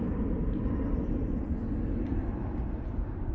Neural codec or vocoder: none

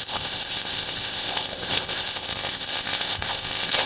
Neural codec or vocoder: codec, ZipCodec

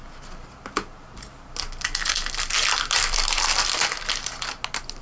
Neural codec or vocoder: none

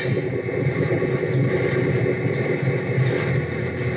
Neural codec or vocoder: none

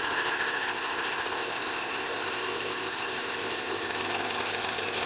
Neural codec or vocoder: codec, ZipCodec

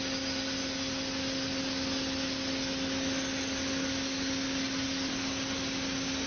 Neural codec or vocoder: none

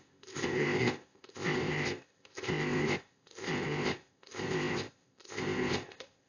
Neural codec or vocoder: codec, ZipCodec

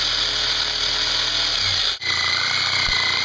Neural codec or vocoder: none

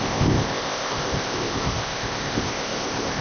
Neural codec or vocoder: codec, ZipCodec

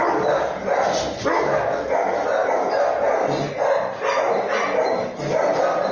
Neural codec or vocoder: none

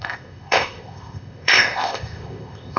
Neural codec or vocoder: codec, ZipCodec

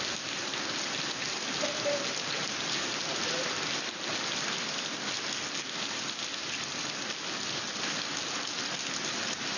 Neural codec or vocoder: none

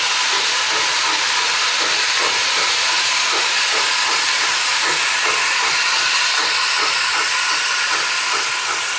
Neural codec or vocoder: none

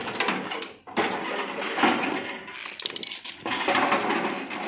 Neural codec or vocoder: none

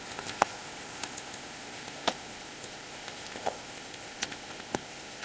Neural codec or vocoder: codec, ZipCodec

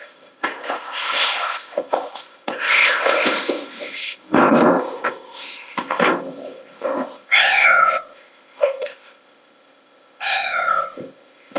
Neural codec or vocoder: codec, ZipCodec